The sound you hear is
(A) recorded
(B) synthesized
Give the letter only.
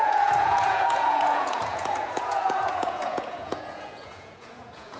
B